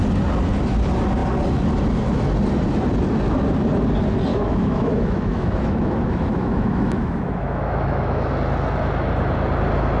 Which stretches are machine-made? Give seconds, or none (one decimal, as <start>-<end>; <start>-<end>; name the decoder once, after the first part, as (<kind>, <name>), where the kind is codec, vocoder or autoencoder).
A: 4.3-8.3 (autoencoder, DAC-VAE)